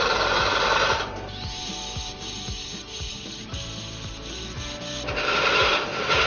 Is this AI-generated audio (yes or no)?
yes